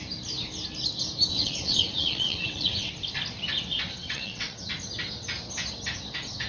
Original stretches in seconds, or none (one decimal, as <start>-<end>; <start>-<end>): 0.0-1.3; 2.9-4.0; 4.6-6.5